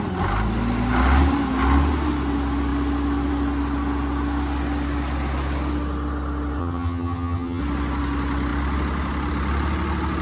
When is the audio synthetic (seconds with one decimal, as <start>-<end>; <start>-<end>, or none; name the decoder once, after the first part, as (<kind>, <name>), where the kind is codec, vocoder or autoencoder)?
6.6-7.6 (vocoder, HiFi-GAN)